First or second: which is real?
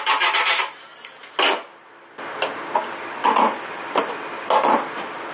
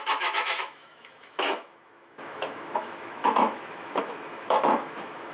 first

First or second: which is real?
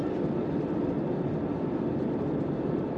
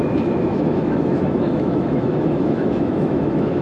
first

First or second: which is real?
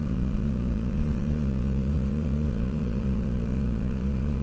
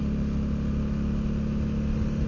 second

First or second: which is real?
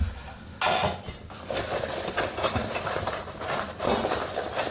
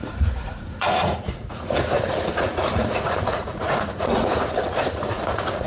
first